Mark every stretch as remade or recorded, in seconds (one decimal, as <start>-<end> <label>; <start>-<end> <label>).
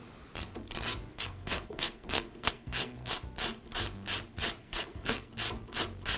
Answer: 0.0-1.1 recorded; 1.1-3.1 remade; 3.1-4.6 recorded; 4.6-5.3 remade; 5.3-6.2 recorded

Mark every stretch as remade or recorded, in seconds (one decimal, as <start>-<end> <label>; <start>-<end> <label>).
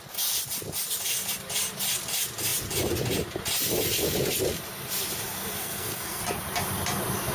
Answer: 0.0-5.6 recorded; 5.6-6.2 remade; 6.2-7.3 recorded